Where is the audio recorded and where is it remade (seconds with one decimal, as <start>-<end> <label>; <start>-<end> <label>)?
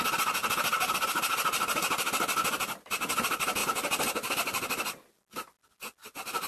0.0-6.5 recorded